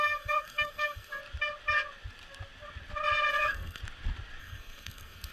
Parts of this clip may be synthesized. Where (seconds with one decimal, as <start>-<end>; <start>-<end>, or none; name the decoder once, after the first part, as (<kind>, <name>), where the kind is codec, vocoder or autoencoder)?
0.0-1.2 (codec, SNAC); 3.3-3.8; 4.4-5.3